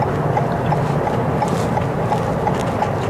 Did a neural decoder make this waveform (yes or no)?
no